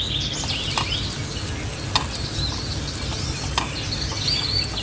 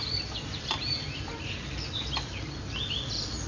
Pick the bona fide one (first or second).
first